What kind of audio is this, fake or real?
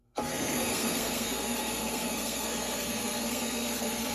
fake